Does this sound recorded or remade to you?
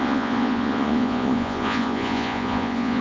remade